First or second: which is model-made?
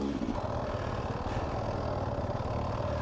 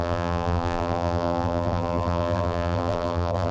second